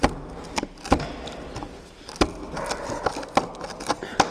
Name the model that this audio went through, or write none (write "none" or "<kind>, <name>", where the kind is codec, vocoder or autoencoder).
none